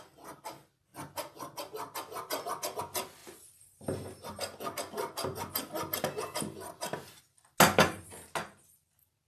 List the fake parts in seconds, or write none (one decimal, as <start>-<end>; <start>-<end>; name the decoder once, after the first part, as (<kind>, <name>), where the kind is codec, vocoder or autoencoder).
none